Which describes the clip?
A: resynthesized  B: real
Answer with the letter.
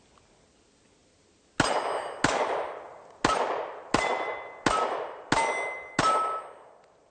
B